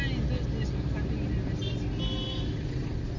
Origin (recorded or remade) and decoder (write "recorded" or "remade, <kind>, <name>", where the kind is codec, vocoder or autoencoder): recorded